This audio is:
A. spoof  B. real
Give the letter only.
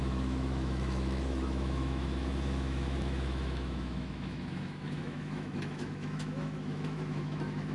A